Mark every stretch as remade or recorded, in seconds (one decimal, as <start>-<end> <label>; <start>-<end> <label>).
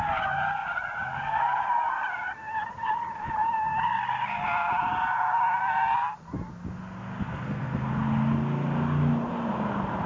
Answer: 0.0-7.3 recorded; 7.3-7.9 remade; 7.9-10.1 recorded